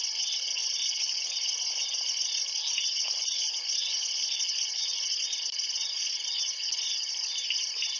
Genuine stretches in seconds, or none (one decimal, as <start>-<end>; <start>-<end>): 0.0-8.0